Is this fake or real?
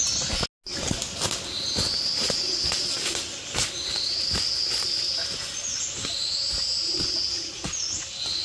real